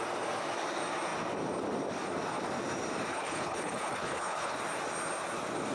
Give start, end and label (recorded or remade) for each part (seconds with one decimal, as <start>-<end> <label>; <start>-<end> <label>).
0.0-3.1 recorded; 3.1-4.6 remade; 4.6-5.7 recorded